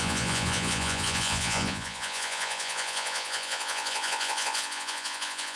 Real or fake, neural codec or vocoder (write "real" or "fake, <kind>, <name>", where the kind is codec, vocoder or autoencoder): fake, vocoder, Vocos